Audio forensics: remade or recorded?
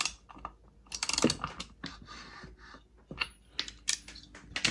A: recorded